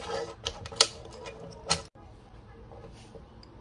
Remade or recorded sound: recorded